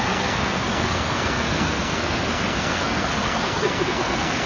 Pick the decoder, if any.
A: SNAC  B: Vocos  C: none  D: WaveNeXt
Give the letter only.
A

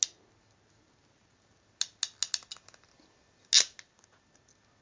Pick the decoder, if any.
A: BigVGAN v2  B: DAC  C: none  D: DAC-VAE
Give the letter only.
C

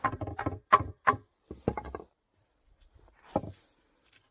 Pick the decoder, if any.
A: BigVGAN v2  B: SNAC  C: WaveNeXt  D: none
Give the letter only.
D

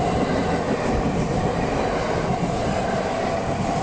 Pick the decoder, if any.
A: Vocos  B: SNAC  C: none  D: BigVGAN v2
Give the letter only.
C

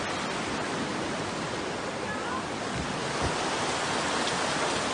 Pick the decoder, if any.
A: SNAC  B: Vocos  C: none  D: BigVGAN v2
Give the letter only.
C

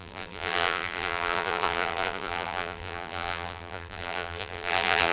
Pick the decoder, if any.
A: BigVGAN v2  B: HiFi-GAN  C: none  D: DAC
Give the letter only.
A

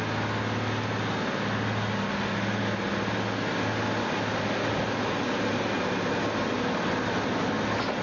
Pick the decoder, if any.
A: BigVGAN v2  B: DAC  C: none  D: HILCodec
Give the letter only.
C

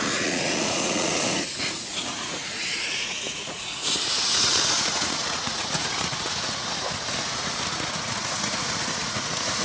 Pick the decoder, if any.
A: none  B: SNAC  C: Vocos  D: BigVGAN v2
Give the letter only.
C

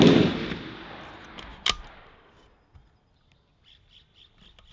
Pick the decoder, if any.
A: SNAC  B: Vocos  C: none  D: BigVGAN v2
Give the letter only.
C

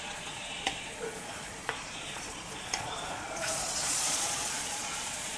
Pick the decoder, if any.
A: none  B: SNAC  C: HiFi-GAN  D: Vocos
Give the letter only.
D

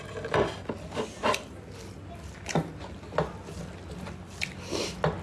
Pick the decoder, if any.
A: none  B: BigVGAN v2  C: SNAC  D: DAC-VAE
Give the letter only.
A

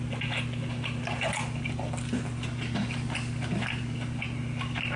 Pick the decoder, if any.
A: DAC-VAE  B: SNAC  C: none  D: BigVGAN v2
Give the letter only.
C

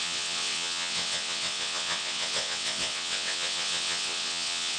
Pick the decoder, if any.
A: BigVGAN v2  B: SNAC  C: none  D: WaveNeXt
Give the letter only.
D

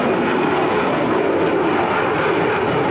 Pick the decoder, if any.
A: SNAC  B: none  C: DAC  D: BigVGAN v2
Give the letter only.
B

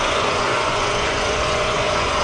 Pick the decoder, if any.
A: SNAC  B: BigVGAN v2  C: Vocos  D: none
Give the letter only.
C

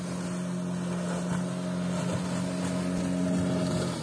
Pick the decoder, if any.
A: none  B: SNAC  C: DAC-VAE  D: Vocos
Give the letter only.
A